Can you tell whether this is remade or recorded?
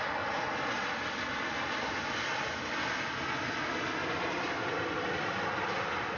recorded